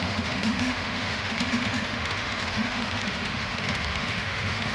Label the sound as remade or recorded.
remade